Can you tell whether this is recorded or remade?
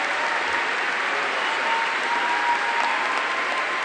recorded